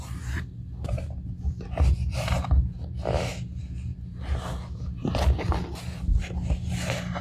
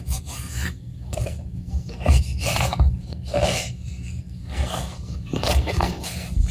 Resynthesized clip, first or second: second